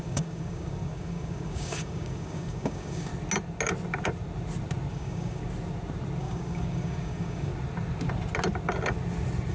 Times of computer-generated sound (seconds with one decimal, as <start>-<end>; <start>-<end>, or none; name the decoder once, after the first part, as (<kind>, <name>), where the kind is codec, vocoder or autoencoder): 0.0-3.1 (codec, DAC); 4.9-5.4; 6.2-7.5